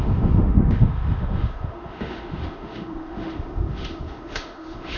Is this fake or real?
fake